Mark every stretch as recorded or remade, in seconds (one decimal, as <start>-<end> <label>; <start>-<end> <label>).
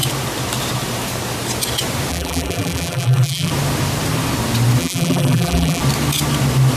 0.0-2.1 recorded; 2.1-3.5 remade; 3.5-4.8 recorded; 4.8-5.8 remade; 5.8-6.8 recorded